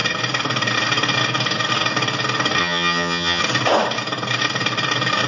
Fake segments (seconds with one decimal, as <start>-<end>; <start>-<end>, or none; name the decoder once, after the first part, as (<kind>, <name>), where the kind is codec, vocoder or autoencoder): 2.6-3.4 (vocoder, HiFi-GAN)